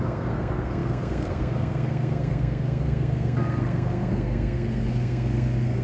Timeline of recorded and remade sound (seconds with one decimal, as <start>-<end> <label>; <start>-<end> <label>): 0.0-5.8 remade